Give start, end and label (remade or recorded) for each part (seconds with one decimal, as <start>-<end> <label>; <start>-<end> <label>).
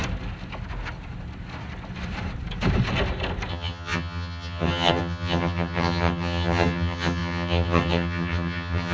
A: 0.0-3.5 recorded; 3.5-8.9 remade